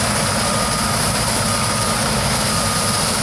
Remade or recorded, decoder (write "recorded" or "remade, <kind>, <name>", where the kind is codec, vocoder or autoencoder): recorded